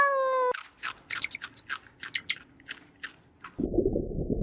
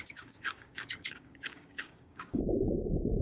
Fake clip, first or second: second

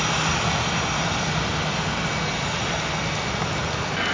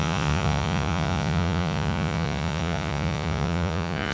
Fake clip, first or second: second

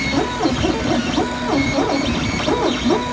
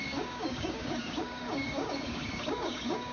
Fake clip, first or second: second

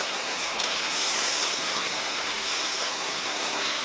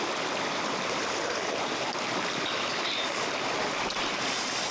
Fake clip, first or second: first